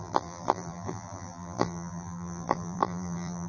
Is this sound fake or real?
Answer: fake